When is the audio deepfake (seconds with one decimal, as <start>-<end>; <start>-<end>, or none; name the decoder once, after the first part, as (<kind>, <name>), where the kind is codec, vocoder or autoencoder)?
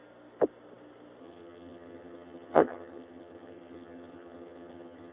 1.2-5.1 (vocoder, HiFi-GAN)